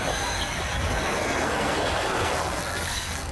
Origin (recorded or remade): remade